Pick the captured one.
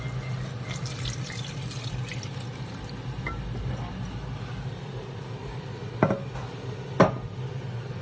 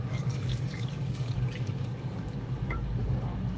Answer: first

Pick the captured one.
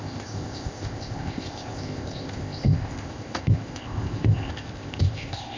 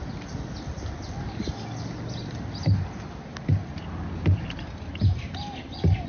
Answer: second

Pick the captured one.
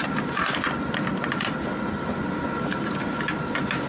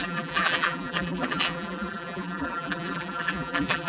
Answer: first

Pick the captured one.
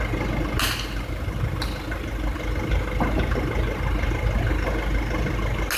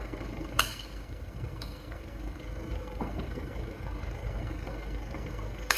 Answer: first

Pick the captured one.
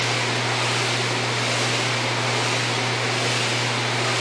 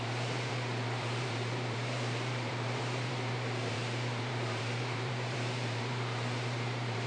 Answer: first